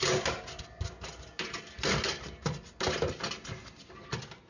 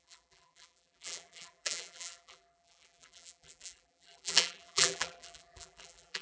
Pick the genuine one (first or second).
first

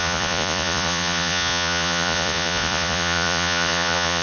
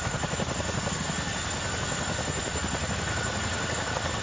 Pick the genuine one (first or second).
second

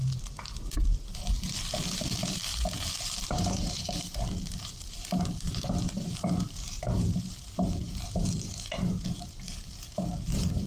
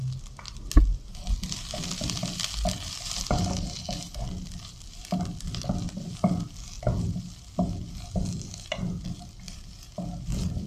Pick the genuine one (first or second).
second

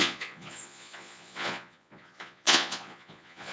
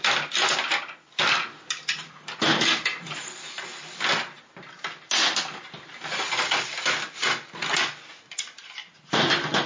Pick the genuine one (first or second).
second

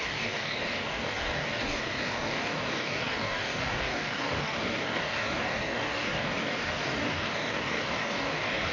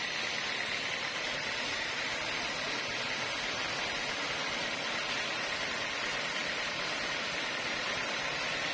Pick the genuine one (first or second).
second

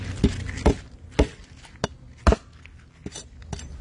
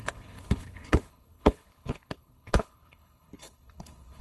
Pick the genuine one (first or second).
first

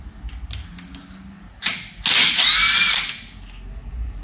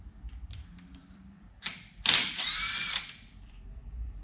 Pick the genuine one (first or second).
first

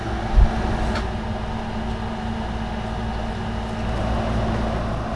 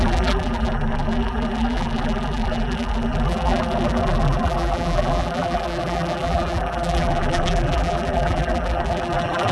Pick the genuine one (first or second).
first